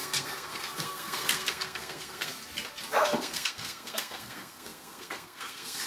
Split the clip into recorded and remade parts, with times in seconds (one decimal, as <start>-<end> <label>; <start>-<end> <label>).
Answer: 0.0-2.3 remade; 2.3-2.9 recorded; 2.9-5.9 remade